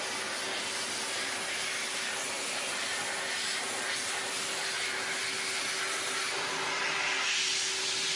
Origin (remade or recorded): recorded